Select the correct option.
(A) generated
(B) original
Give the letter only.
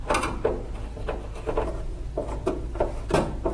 B